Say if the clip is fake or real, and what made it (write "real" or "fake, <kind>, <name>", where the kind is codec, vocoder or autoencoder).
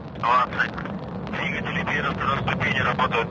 real